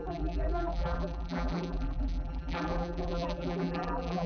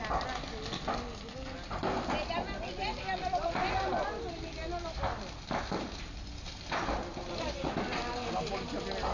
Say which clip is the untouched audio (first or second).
second